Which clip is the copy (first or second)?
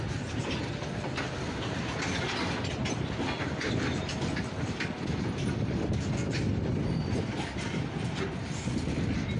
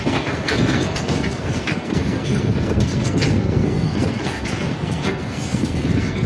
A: second